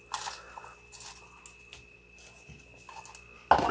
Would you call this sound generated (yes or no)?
no